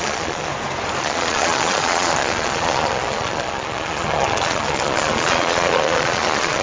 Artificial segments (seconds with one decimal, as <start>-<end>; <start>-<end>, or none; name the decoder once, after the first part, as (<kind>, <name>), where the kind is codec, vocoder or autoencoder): 0.0-0.5 (vocoder, Vocos); 1.0-6.6